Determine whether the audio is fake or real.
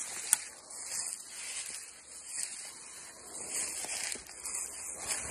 real